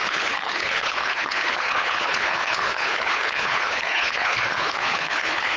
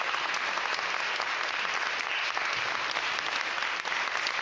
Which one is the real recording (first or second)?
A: second